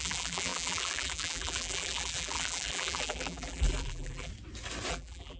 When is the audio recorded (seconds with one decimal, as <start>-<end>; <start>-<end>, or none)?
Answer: 4.3-4.9